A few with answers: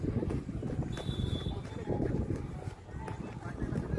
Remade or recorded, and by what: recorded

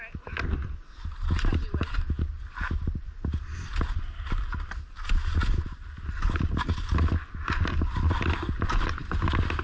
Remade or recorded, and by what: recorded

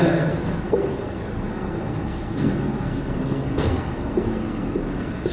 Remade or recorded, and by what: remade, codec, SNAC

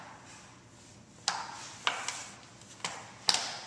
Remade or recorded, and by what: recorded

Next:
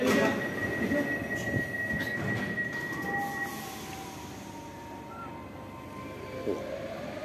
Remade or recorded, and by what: recorded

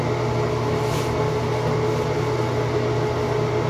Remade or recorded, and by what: recorded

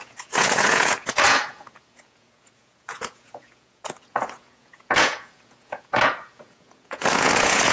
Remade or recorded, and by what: remade, vocoder, Vocos